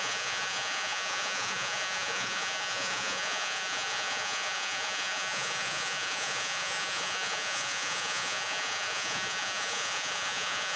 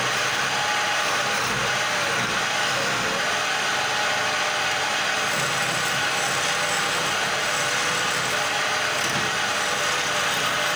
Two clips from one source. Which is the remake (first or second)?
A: first